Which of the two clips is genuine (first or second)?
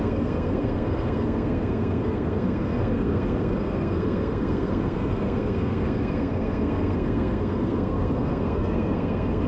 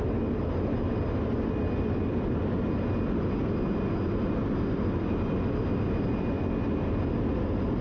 second